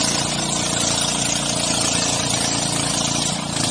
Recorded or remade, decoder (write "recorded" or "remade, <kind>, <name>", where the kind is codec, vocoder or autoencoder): recorded